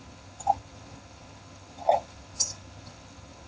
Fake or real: fake